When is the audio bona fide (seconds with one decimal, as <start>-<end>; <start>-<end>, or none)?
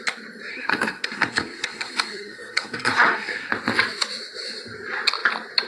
0.0-0.5; 3.5-5.7